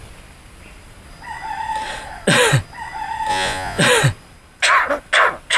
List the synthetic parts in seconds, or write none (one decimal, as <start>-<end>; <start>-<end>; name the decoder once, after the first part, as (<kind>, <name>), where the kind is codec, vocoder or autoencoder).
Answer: 3.3-3.8 (vocoder, Vocos)

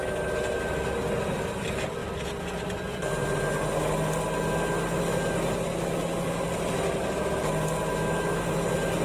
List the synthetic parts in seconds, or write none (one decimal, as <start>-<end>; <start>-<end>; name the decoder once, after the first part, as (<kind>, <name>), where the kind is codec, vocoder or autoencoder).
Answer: none

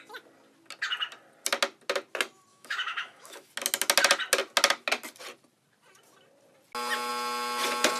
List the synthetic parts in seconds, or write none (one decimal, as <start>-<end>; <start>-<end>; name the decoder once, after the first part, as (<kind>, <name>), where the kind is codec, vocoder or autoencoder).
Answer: 2.5-3.5 (autoencoder, DAC-VAE)

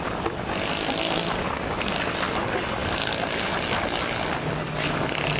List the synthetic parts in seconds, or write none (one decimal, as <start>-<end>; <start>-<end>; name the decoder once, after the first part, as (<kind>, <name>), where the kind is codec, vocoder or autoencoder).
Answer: none

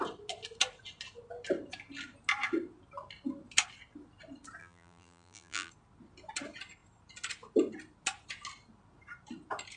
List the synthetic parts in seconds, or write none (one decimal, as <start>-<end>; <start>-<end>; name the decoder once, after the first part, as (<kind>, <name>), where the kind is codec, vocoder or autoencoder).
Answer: 4.6-5.7 (vocoder, BigVGAN v2)

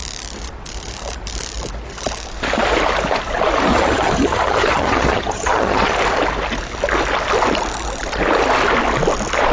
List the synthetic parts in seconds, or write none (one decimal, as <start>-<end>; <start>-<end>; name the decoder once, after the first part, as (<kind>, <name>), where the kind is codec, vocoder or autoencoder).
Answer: 3.7-5.9 (vocoder, HiFi-GAN)